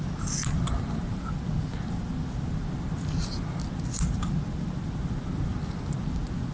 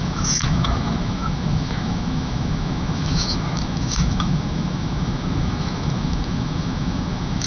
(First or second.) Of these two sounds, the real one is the first